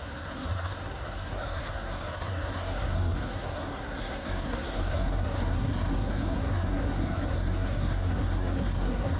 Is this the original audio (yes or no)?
no